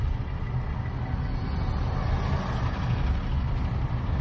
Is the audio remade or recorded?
recorded